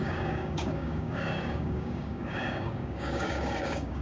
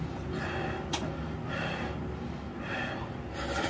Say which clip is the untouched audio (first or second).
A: second